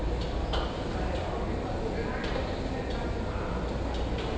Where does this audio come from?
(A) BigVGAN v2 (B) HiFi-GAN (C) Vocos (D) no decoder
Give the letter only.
D